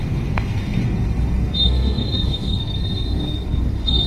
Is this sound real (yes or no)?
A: no